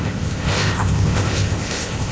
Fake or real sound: fake